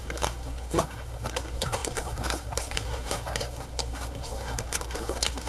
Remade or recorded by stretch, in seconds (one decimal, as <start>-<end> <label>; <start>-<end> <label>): 0.0-5.5 remade

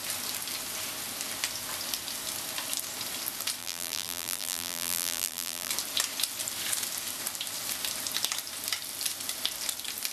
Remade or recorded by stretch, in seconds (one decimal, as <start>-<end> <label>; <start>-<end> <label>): 0.0-3.6 recorded; 3.6-5.7 remade; 5.7-10.1 recorded

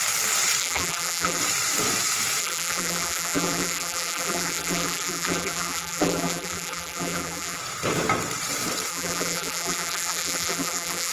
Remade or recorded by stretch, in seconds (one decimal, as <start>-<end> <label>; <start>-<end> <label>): 0.0-0.6 recorded; 0.6-1.4 remade; 1.4-2.4 recorded; 2.4-7.6 remade; 7.6-8.9 recorded; 8.9-11.1 remade

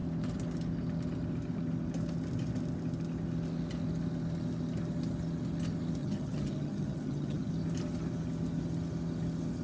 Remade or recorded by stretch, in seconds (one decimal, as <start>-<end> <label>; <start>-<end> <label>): 0.0-6.0 recorded; 6.0-7.5 remade; 7.5-9.6 recorded

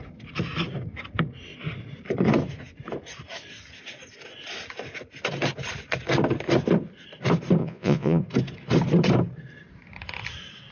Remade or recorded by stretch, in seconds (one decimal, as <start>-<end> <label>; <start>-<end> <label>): 0.0-7.6 recorded; 7.6-8.2 remade; 8.2-10.7 recorded